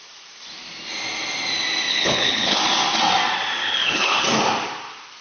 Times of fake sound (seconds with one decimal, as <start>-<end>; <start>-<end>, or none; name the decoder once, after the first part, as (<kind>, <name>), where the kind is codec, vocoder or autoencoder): 1.9-2.6 (codec, HILCodec); 3.6-4.2